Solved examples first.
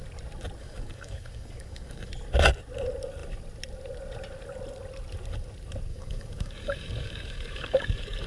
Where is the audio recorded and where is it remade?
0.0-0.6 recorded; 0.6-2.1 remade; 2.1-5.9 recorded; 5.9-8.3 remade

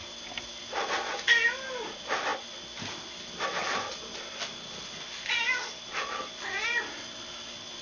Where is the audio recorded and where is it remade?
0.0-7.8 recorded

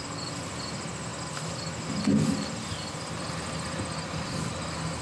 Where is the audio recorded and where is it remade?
0.0-5.0 recorded

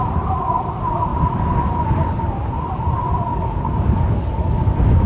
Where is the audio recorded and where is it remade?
0.0-3.3 recorded; 3.3-5.1 remade

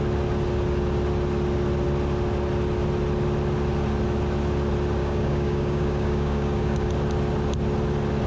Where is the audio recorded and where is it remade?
0.0-5.0 recorded; 5.0-6.9 remade; 6.9-8.3 recorded